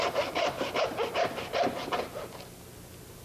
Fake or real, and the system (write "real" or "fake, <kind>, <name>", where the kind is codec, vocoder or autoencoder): real